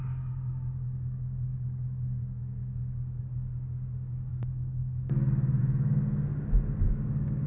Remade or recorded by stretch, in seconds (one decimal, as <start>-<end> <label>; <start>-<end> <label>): 0.0-6.3 remade; 6.3-6.9 recorded; 6.9-7.5 remade